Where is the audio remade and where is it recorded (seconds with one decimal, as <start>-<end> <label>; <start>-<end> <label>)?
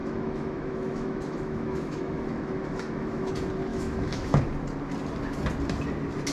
0.0-3.3 remade; 3.3-3.7 recorded; 3.7-4.4 remade; 4.4-6.3 recorded